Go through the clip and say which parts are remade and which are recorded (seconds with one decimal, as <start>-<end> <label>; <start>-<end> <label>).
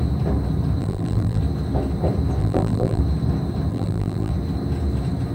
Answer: 0.0-0.8 recorded; 0.8-1.4 remade; 1.4-2.4 recorded; 2.4-3.0 remade; 3.0-3.7 recorded; 3.7-4.3 remade; 4.3-5.3 recorded